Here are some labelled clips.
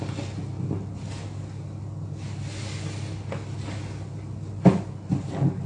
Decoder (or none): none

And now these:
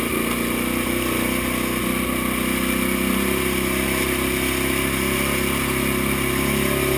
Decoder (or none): none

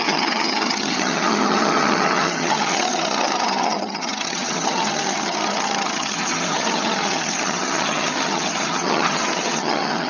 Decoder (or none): vocoder, HiFi-GAN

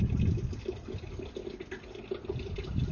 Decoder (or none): none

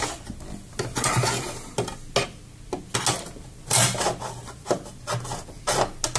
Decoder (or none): none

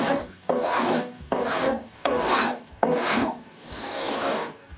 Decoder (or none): codec, DAC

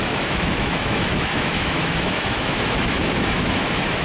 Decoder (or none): autoencoder, DAC-VAE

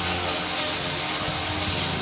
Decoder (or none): none